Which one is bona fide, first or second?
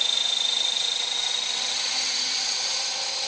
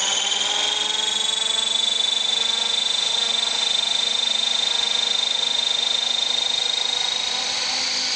second